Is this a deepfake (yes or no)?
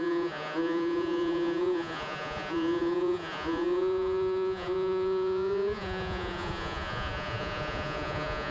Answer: yes